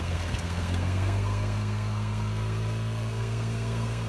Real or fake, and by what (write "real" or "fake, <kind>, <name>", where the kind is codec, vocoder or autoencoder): fake, codec, SNAC